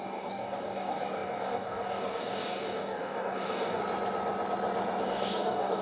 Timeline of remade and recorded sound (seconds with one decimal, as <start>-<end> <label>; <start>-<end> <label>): 0.0-3.8 remade; 3.8-5.0 recorded; 5.0-5.8 remade